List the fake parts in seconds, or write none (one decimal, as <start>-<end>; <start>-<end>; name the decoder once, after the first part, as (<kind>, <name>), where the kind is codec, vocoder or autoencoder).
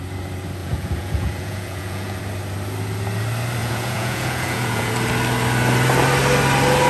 0.6-2.2 (vocoder, Vocos); 3.6-4.9